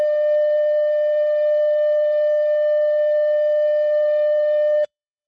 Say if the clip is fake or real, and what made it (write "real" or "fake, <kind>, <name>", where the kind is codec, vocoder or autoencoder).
fake, codec, SNAC